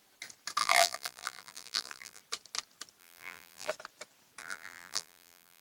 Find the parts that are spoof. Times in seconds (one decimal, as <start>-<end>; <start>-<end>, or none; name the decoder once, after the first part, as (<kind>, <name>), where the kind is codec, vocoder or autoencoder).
0.6-2.2 (vocoder, BigVGAN v2); 3.0-3.7; 4.4-5.6